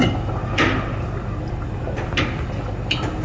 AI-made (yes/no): no